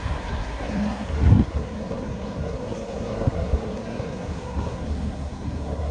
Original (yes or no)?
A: no